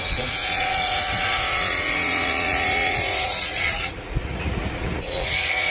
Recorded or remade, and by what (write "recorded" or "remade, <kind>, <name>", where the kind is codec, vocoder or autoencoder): remade, vocoder, Vocos